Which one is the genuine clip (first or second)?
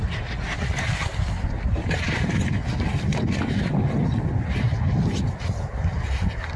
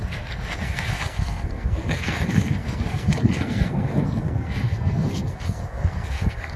first